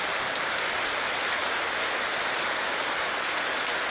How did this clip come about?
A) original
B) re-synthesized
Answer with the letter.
A